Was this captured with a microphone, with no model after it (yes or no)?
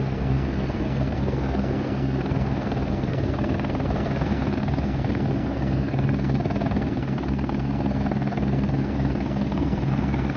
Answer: no